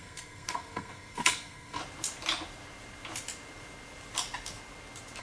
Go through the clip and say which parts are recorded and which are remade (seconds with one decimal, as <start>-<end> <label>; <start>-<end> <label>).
0.0-1.8 remade; 1.8-5.2 recorded